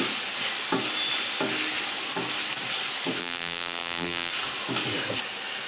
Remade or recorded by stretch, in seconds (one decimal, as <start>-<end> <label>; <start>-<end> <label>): 0.0-3.2 recorded; 3.2-4.3 remade; 4.3-5.7 recorded